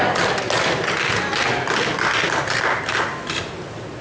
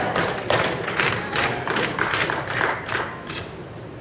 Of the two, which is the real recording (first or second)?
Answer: first